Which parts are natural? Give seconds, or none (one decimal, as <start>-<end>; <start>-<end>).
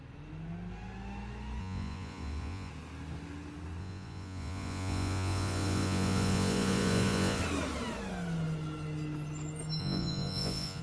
0.0-1.6; 2.7-3.8; 7.4-9.8